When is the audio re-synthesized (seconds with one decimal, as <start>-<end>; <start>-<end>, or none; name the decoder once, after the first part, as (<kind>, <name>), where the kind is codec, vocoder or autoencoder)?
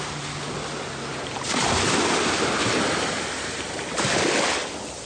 1.1-1.8 (vocoder, BigVGAN v2)